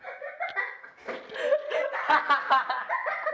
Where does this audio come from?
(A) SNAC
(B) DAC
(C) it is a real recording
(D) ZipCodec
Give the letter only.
C